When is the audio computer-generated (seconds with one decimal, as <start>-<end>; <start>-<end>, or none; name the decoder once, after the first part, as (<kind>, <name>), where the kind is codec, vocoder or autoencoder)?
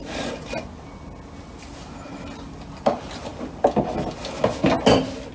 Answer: none